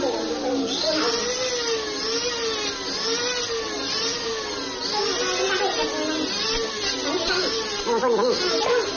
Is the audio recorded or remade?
recorded